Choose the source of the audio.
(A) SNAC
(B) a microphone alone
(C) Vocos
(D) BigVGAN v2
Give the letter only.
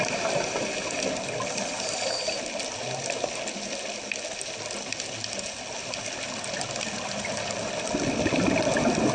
B